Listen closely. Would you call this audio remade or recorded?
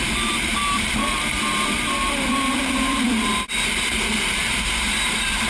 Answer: remade